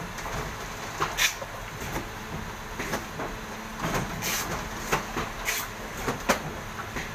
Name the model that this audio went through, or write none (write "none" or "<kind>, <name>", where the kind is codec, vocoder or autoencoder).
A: none